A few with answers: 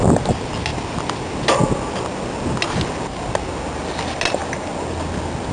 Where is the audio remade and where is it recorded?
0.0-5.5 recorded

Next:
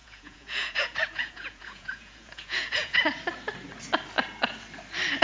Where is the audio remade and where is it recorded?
0.0-3.0 remade; 3.0-5.2 recorded

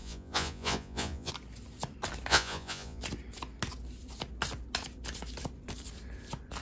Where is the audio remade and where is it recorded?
0.0-1.3 remade; 1.3-2.3 recorded; 2.3-3.0 remade; 3.0-6.6 recorded

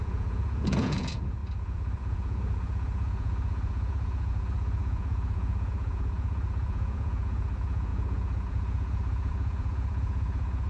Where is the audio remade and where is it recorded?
0.0-10.7 remade